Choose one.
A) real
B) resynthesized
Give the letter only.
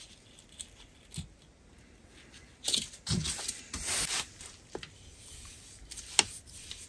A